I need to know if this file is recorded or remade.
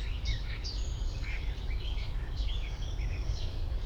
remade